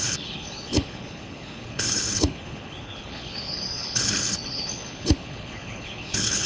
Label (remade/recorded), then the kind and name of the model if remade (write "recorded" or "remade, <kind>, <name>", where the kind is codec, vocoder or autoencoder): remade, codec, HILCodec